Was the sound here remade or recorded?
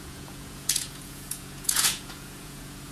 remade